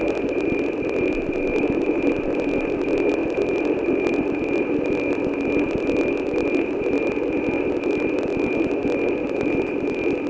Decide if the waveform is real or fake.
real